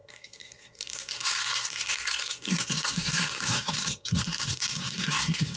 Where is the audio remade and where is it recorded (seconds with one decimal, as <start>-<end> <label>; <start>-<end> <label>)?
0.0-5.6 remade